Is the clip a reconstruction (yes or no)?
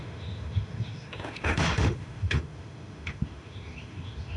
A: yes